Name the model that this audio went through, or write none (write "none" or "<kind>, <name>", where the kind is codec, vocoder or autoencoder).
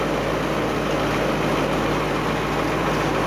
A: none